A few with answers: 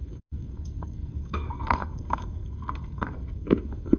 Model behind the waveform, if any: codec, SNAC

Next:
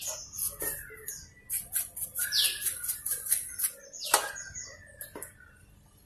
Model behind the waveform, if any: none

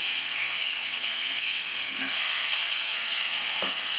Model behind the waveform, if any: codec, SNAC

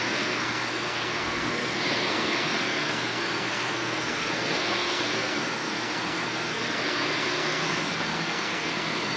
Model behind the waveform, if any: codec, SNAC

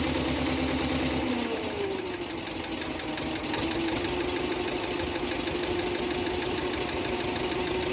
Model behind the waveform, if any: none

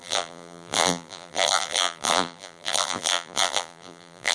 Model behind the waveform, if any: vocoder, BigVGAN v2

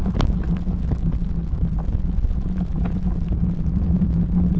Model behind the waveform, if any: none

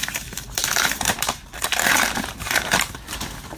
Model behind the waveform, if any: vocoder, BigVGAN v2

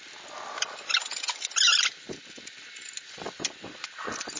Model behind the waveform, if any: none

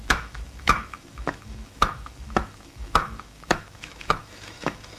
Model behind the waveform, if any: autoencoder, DAC-VAE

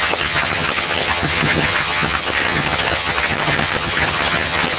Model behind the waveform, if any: vocoder, HiFi-GAN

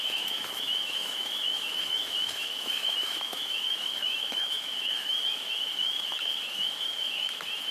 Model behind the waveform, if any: autoencoder, DAC-VAE